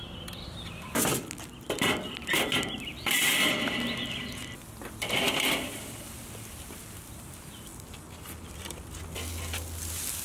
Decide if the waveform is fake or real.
real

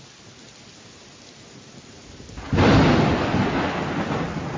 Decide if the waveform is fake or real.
real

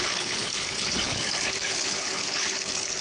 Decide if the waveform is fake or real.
fake